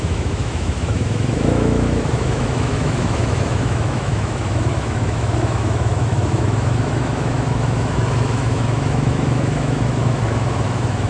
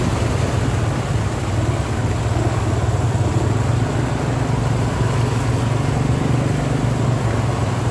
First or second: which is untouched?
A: second